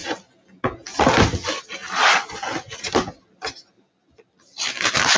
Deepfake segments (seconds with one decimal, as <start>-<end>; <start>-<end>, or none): none